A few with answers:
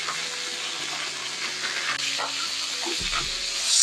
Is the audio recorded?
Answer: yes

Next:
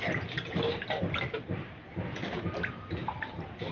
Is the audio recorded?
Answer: no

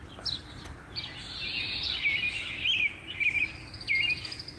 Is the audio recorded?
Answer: yes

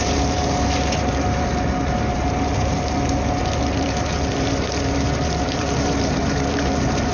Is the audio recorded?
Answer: no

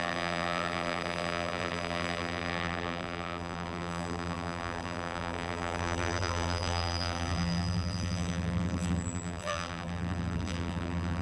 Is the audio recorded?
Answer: no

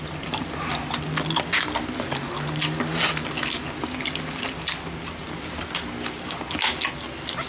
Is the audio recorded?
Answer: yes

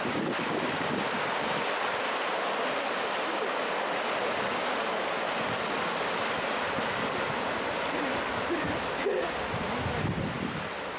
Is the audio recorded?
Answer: yes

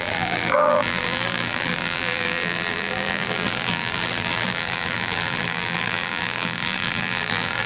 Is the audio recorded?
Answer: no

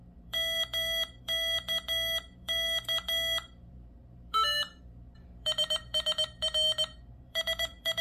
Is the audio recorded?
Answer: no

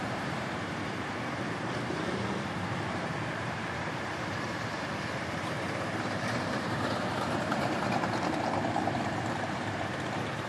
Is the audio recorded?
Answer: no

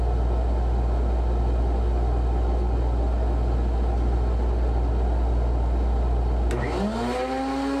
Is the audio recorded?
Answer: yes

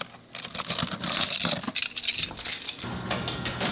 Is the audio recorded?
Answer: yes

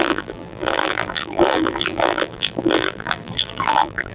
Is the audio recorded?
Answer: no